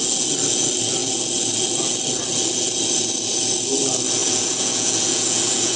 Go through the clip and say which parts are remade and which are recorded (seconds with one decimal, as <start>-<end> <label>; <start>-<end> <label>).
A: 0.0-4.2 recorded; 4.2-5.8 remade